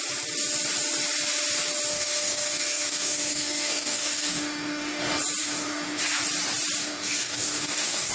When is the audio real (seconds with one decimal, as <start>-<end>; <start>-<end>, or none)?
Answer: 0.0-1.9; 5.0-5.4; 6.0-6.8